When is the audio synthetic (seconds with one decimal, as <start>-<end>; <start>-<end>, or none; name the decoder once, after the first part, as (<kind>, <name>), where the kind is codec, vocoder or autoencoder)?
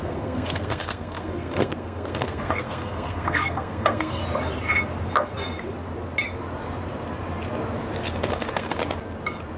0.0-4.2 (codec, SNAC); 8.3-8.8